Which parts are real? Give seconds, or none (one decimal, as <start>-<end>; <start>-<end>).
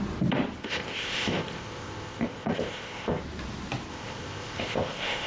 0.0-0.6; 3.2-3.9